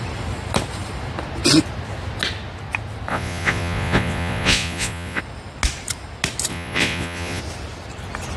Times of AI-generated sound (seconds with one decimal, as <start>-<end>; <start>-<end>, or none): 3.1-5.2; 6.5-7.4